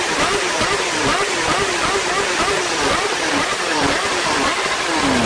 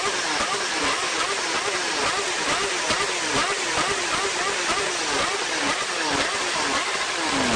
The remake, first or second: first